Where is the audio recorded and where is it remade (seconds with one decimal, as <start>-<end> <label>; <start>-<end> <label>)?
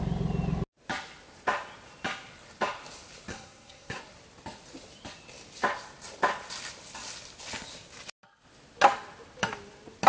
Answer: 0.0-3.3 recorded; 3.3-4.0 remade; 4.0-10.1 recorded